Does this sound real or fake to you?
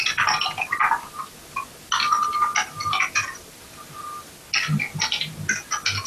real